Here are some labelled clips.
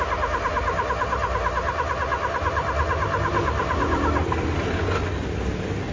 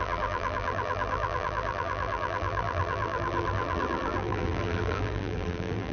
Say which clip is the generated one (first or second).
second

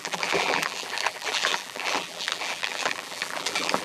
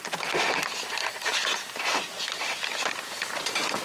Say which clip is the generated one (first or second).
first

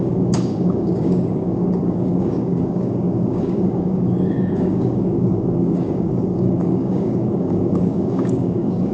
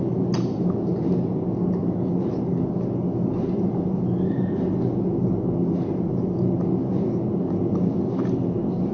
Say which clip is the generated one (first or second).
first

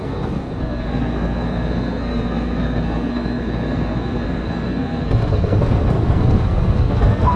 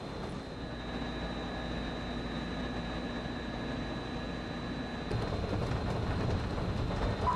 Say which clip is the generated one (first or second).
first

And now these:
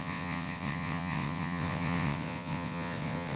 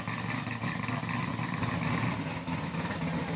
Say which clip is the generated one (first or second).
first